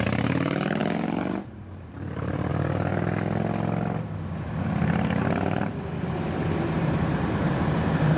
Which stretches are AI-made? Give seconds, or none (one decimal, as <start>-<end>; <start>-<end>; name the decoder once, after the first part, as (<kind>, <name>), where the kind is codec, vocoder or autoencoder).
0.0-2.9 (vocoder, BigVGAN v2); 5.2-8.2